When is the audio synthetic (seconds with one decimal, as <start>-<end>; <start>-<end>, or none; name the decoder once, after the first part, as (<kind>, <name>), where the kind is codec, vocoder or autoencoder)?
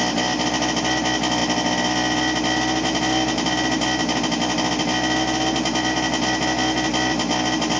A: none